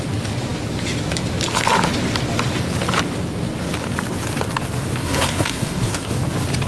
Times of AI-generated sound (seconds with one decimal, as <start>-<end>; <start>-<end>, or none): 5.0-6.1